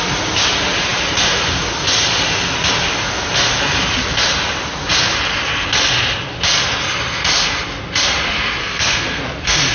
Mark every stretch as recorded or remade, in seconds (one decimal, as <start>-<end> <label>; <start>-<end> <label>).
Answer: 0.0-8.6 recorded; 8.6-9.2 remade; 9.2-9.7 recorded